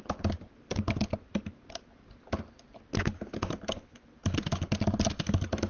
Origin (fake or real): real